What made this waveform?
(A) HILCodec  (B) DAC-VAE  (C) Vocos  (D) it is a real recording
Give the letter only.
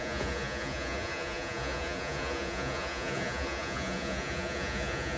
C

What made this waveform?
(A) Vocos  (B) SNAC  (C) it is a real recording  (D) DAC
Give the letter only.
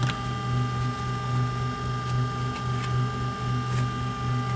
C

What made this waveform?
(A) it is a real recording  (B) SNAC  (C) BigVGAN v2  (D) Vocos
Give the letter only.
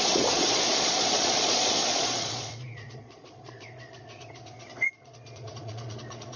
D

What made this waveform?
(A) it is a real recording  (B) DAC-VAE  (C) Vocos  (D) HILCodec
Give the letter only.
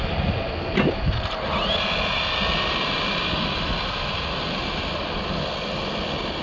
A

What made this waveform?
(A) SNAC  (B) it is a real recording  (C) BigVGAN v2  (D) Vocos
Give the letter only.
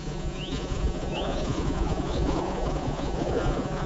D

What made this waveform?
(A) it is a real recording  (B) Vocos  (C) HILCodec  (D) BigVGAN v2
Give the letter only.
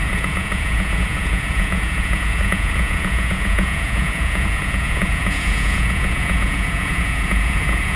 B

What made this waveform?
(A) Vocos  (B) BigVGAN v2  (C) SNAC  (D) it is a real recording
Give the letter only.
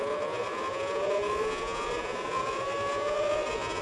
A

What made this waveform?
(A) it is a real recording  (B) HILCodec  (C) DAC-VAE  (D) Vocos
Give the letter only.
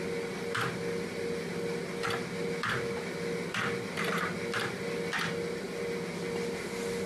A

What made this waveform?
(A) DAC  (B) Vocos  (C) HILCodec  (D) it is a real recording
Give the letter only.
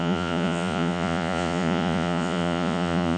B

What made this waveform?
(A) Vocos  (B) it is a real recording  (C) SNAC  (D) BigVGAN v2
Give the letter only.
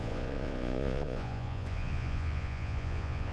A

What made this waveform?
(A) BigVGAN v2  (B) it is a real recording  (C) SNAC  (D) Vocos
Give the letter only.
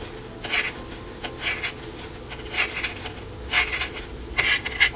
B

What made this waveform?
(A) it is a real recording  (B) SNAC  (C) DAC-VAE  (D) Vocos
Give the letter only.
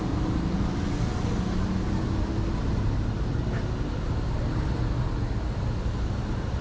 A